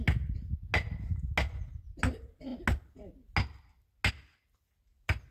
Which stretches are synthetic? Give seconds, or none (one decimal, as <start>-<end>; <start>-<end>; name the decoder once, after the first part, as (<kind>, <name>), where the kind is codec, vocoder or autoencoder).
none